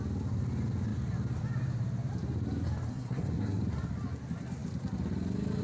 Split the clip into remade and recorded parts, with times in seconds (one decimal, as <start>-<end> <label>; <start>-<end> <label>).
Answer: 0.0-2.9 recorded; 2.9-3.6 remade; 3.6-5.6 recorded